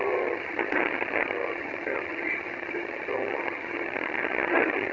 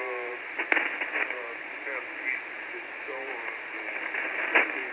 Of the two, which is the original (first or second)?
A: second